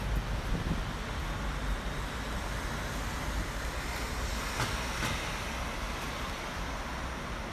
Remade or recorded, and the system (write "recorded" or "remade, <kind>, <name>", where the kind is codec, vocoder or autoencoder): recorded